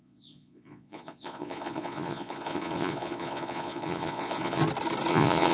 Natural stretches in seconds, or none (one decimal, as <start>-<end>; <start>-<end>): 4.6-5.1